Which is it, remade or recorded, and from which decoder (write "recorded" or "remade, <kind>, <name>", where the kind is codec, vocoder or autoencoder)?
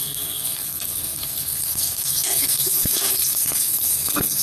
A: remade, codec, SNAC